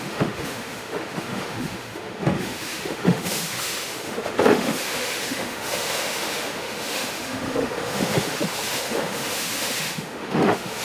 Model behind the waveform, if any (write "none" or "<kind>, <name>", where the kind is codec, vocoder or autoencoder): autoencoder, DAC-VAE